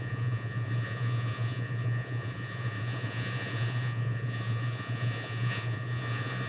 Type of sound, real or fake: fake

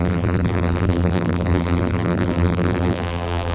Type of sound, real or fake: fake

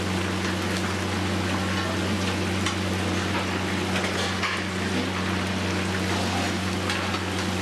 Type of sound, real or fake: real